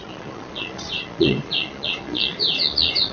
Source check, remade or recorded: remade